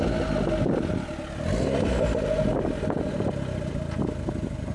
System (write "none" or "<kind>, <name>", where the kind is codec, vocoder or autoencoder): none